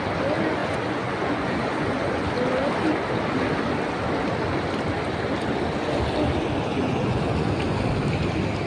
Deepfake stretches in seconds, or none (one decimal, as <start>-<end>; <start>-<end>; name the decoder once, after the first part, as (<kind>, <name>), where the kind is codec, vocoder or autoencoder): 0.6-2.3 (vocoder, Vocos); 6.7-7.8

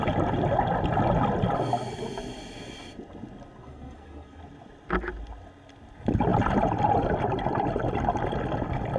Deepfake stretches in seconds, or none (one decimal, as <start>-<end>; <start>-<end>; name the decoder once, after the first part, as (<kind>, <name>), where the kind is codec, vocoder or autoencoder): 3.6-4.4 (codec, SNAC)